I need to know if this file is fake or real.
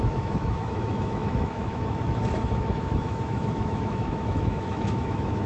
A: fake